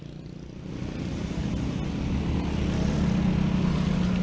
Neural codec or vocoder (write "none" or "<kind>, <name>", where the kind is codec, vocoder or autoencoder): none